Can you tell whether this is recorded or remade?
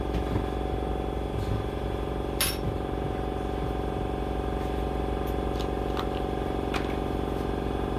recorded